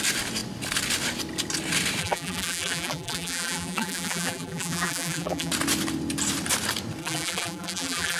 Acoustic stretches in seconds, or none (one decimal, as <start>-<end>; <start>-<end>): 0.0-2.0; 5.5-7.0